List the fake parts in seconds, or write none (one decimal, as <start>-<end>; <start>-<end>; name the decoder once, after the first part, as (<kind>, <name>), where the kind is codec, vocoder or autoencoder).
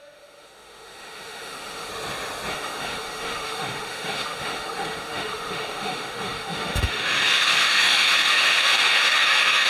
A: 0.0-1.9 (autoencoder, DAC-VAE); 2.5-9.7